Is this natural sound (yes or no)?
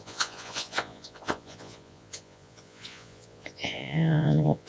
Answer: no